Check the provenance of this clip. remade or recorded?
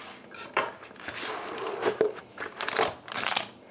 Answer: recorded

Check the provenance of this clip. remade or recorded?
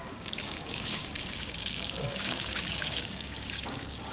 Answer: remade